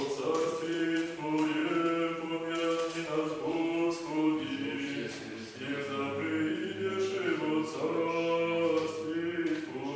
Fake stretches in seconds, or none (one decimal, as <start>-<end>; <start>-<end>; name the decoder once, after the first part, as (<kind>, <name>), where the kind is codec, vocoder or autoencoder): 0.0-1.6 (vocoder, BigVGAN v2); 2.2-5.7; 9.3-10.0